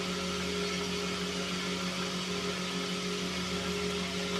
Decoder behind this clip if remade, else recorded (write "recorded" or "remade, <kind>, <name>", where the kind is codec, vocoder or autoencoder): recorded